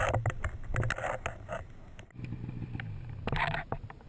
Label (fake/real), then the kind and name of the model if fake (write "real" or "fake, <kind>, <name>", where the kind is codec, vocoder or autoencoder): real